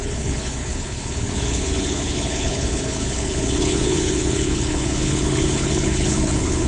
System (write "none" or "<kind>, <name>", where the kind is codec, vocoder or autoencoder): codec, HILCodec